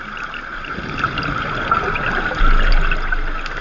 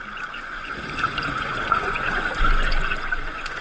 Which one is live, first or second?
first